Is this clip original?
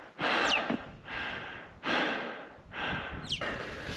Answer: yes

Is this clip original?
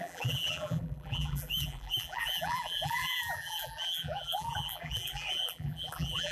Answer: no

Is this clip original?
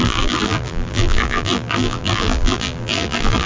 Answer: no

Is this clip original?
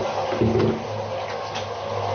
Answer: yes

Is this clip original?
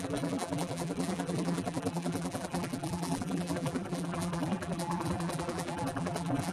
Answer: no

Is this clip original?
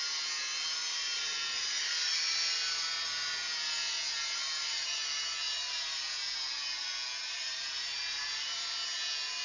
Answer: yes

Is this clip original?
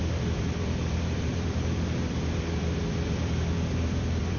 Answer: no